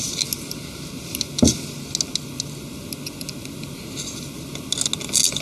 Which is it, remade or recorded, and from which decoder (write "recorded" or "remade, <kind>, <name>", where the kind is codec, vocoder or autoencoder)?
recorded